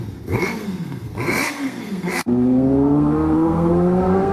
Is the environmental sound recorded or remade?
remade